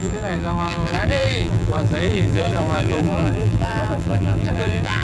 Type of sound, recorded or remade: remade